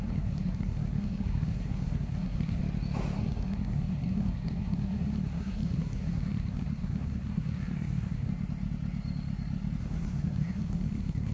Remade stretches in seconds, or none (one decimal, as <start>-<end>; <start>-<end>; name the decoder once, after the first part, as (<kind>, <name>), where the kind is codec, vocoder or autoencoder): 0.0-2.6 (codec, SNAC); 3.2-8.3; 9.8-11.3